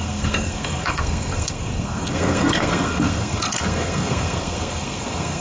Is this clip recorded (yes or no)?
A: no